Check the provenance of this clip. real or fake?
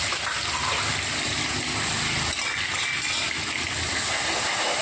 real